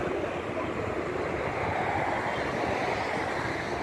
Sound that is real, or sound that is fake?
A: real